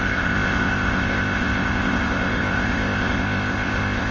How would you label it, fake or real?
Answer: fake